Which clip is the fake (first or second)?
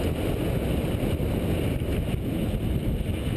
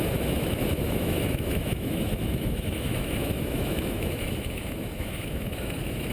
second